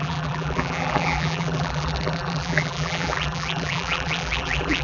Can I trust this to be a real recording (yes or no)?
no